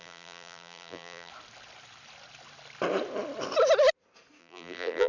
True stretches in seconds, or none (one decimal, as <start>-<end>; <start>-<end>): 1.3-4.4